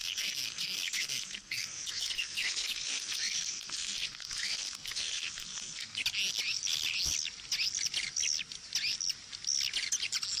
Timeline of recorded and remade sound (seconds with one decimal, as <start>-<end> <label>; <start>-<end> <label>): 0.0-6.0 remade; 6.0-10.4 recorded

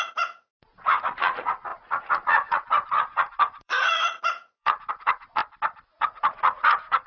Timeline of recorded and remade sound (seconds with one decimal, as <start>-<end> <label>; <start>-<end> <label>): 0.0-5.4 remade; 5.4-6.0 recorded; 6.0-7.1 remade

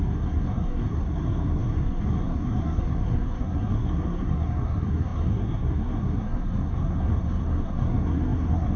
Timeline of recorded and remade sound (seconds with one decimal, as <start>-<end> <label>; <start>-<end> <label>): 0.0-8.8 remade

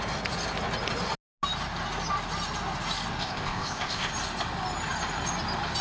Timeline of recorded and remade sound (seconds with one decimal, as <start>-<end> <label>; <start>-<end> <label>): 0.0-3.2 recorded; 3.2-4.1 remade; 4.1-5.8 recorded

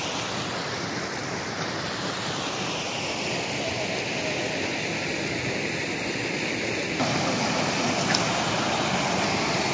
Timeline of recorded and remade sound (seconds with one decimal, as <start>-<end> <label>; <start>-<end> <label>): 0.0-9.7 recorded